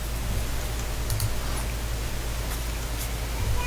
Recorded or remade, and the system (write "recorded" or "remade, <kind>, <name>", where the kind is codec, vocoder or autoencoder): recorded